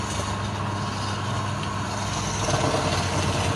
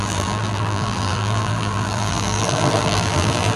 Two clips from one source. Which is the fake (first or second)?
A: second